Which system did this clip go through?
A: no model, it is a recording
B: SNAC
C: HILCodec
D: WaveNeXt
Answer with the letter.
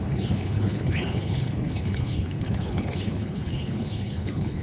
C